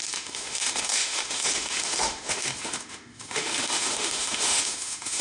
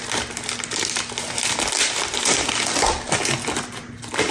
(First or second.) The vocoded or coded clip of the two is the first